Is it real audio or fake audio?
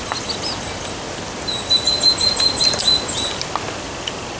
real